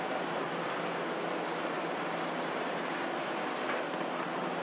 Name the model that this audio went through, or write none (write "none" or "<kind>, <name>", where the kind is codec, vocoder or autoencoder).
none